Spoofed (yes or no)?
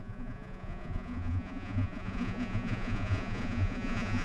yes